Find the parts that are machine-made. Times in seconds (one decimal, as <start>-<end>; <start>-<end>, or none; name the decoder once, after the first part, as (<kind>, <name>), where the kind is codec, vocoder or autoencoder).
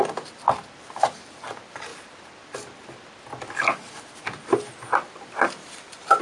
5.6-6.2 (vocoder, BigVGAN v2)